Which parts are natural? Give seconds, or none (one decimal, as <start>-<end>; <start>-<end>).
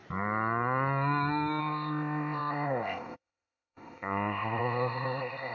0.0-1.6